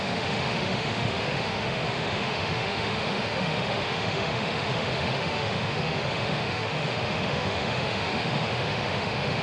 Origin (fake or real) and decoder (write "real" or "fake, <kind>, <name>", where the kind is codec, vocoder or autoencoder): fake, autoencoder, DAC-VAE